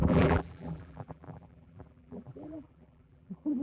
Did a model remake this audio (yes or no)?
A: yes